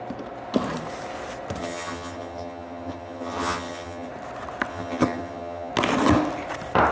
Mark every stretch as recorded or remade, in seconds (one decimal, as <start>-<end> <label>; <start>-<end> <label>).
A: 0.0-1.6 recorded; 1.6-4.1 remade; 4.1-4.7 recorded; 4.7-5.7 remade; 5.7-6.9 recorded